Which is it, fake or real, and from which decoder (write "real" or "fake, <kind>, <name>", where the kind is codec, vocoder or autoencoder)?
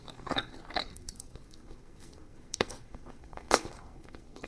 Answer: fake, codec, SNAC